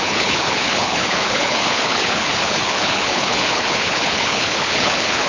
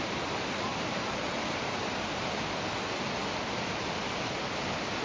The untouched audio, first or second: second